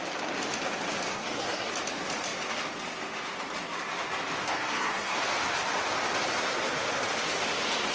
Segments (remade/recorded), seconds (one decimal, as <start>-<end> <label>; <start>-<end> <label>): 0.0-1.1 recorded; 1.1-1.7 remade; 1.7-4.4 recorded; 4.4-5.2 remade; 5.2-7.9 recorded

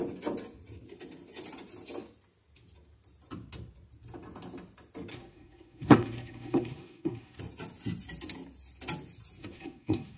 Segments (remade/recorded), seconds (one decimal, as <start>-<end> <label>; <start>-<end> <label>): 0.0-5.1 recorded; 5.1-7.4 remade; 7.4-9.4 recorded; 9.4-10.2 remade

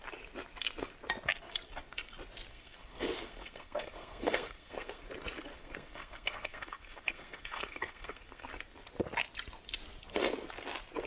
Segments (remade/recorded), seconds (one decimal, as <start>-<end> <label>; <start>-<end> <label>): 0.0-2.5 recorded; 2.5-5.0 remade; 5.0-5.5 recorded; 5.5-8.5 remade; 8.5-11.1 recorded

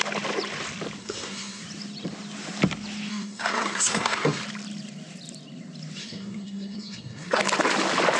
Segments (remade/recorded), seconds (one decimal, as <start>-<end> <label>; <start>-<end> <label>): 0.0-1.0 recorded; 1.0-1.6 remade; 1.6-3.1 recorded; 3.1-4.4 remade; 4.4-6.0 recorded; 6.0-7.4 remade; 7.4-8.2 recorded

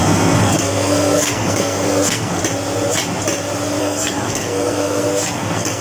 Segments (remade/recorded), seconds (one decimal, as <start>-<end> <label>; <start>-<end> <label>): 0.0-2.4 remade; 2.4-3.8 recorded; 3.8-5.8 remade

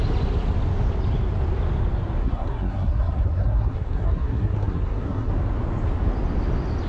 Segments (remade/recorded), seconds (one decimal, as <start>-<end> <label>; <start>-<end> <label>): 0.0-2.2 recorded; 2.2-5.3 remade; 5.3-6.9 recorded

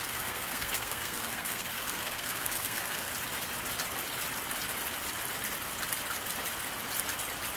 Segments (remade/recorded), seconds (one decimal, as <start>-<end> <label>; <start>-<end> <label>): 0.0-3.1 remade; 3.1-7.6 recorded

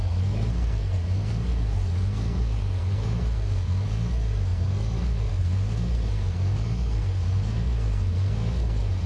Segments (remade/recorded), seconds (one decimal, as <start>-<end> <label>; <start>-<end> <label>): 0.0-9.1 remade